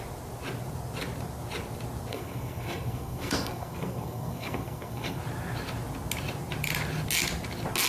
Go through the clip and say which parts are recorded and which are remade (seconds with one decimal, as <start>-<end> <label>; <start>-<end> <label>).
0.0-2.1 recorded; 2.1-5.2 remade; 5.2-7.9 recorded